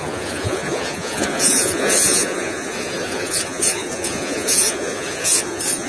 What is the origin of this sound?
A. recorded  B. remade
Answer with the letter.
B